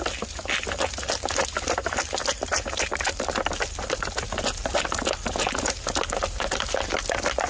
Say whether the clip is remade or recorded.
recorded